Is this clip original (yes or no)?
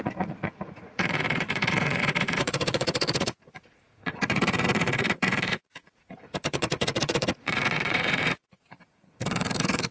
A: no